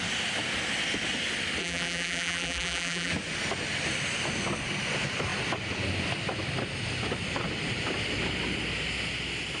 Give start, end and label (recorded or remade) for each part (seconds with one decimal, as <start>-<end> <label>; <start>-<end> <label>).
0.0-1.6 recorded; 1.6-3.1 remade; 3.1-9.6 recorded